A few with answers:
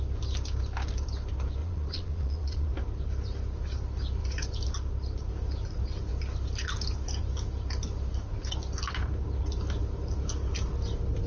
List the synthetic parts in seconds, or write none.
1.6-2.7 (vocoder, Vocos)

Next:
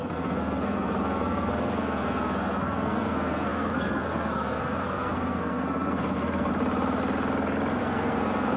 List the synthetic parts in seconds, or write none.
0.0-6.5 (codec, SNAC); 7.8-8.6

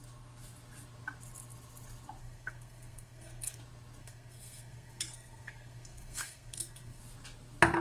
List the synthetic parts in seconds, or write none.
2.2-3.6 (codec, SNAC); 4.0-7.0

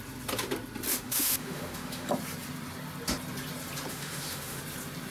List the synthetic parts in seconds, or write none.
0.9-2.1 (autoencoder, DAC-VAE); 3.9-4.6